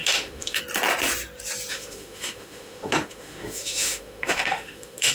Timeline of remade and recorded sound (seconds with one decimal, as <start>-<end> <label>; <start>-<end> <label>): 0.0-0.6 remade; 0.6-1.7 recorded; 1.7-5.1 remade